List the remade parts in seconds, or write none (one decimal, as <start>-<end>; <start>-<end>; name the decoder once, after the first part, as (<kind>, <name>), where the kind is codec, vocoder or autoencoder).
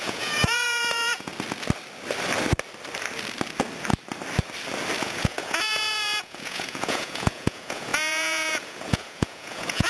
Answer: 0.0-1.3 (vocoder, Vocos); 5.0-9.9